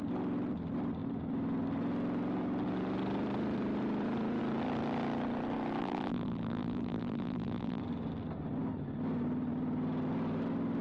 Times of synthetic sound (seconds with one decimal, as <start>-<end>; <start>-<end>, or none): 5.8-7.8